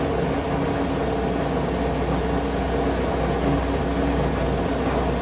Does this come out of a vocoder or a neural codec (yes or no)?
no